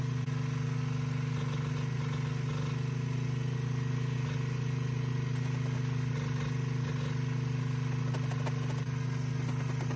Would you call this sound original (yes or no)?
yes